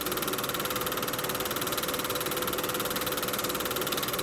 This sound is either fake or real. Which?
real